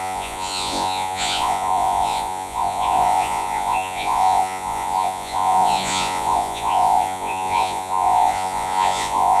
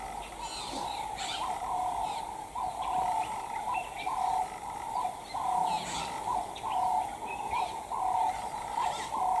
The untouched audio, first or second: second